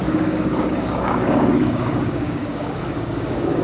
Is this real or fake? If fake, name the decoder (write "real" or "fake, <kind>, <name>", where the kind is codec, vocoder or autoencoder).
fake, codec, DAC